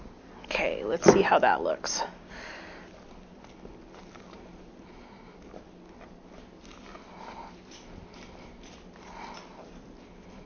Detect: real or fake real